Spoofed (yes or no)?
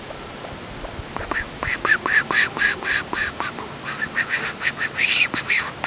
no